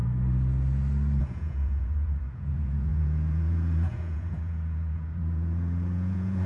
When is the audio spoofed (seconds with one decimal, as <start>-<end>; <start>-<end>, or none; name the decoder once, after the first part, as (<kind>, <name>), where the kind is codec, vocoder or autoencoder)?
1.2-6.5 (vocoder, Vocos)